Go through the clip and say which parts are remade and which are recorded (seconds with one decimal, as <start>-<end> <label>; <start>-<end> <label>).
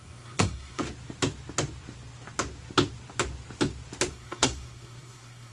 0.0-0.8 remade; 0.8-4.1 recorded; 4.1-5.5 remade